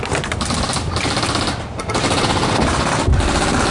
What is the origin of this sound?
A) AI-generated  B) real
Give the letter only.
B